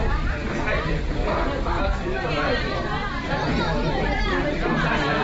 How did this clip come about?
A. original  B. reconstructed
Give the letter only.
B